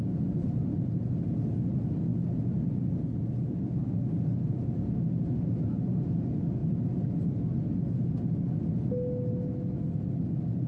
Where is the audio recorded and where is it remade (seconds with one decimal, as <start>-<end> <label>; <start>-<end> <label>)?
0.0-10.7 recorded